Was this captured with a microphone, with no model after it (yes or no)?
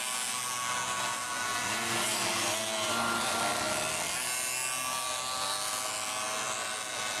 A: yes